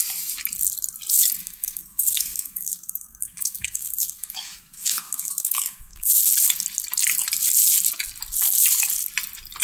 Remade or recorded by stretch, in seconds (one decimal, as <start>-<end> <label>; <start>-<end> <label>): 0.0-1.4 recorded; 1.4-6.1 remade; 6.1-9.6 recorded